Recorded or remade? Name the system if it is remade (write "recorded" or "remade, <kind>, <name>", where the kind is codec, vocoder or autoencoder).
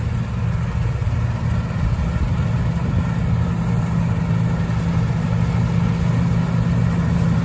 recorded